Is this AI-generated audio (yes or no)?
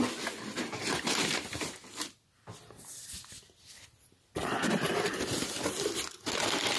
no